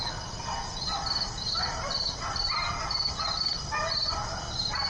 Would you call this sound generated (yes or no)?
no